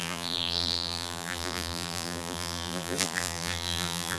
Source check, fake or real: fake